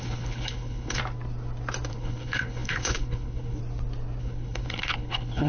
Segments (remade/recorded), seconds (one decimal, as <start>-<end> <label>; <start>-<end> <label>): 0.0-1.0 remade; 1.0-1.9 recorded; 1.9-3.6 remade; 3.6-4.2 recorded; 4.2-5.5 remade